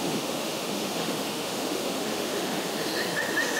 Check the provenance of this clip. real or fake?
fake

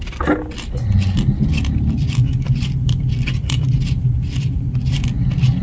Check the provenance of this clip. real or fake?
real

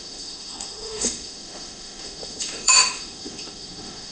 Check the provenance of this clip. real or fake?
fake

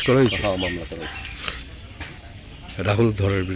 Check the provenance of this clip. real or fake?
real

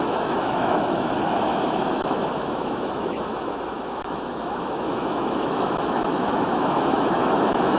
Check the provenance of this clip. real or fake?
fake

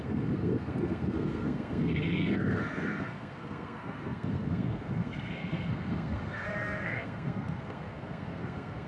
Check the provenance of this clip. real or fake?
fake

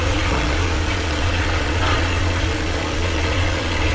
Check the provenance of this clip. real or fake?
fake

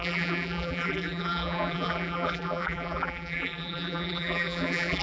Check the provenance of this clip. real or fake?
fake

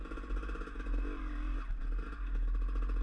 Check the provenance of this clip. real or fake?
real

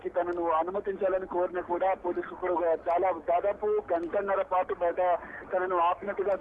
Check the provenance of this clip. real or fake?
real